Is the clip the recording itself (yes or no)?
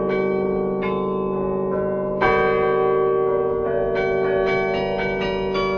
yes